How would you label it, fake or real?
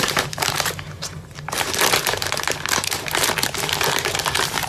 fake